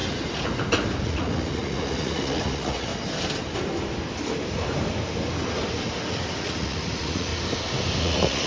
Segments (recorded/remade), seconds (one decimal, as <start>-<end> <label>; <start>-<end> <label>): 0.0-1.0 recorded; 1.0-2.9 remade; 2.9-6.4 recorded; 6.4-7.3 remade; 7.3-8.0 recorded; 8.0-8.5 remade